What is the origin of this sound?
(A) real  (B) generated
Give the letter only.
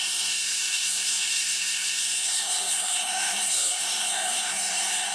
B